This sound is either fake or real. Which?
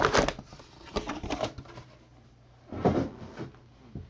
real